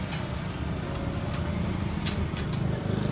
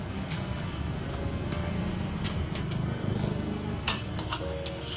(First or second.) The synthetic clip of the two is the second